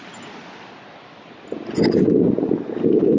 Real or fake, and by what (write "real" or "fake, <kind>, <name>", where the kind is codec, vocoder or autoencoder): real